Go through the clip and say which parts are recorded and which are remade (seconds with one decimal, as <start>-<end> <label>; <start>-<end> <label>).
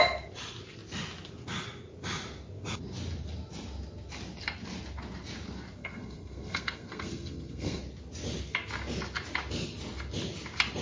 0.0-5.8 recorded; 5.8-7.8 remade; 7.8-10.8 recorded